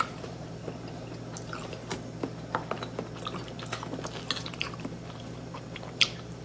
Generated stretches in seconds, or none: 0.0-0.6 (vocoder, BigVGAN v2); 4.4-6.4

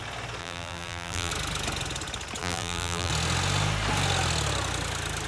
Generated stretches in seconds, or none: 0.4-1.3 (vocoder, BigVGAN v2); 2.4-3.1

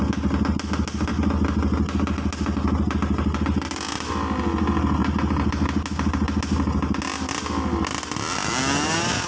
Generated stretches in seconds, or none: none